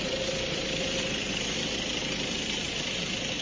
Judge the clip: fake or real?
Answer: fake